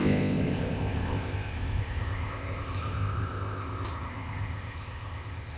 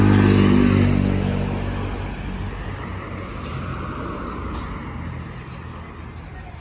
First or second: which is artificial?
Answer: first